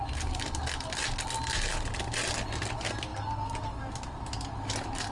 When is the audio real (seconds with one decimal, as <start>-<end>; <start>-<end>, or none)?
0.0-5.1